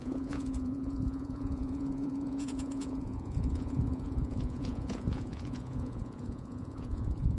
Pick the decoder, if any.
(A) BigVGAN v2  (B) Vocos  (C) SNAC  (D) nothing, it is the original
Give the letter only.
B